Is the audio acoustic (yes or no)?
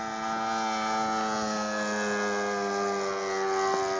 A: yes